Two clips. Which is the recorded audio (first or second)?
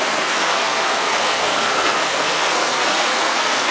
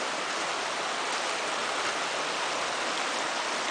second